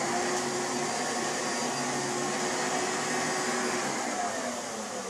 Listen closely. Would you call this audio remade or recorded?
recorded